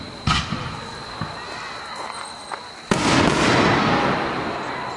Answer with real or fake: real